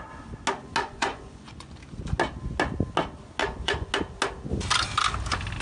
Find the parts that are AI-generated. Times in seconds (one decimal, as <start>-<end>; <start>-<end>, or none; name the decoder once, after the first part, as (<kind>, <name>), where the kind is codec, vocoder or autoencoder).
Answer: 0.8-1.7 (vocoder, Vocos); 3.4-3.9